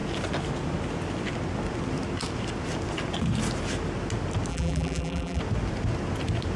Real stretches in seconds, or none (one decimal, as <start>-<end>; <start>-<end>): 0.0-4.5; 5.4-6.6